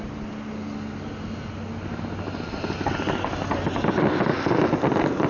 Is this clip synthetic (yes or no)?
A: no